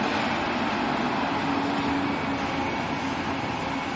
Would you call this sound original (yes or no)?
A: yes